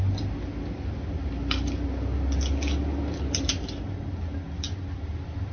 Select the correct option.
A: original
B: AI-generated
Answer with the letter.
A